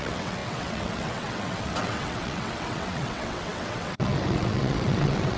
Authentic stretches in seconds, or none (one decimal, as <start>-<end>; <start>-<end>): none